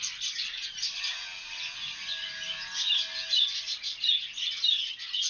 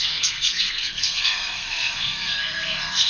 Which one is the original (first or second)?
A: first